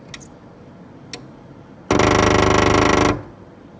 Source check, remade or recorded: recorded